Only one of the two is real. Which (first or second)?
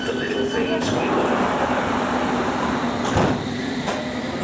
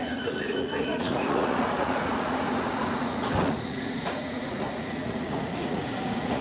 first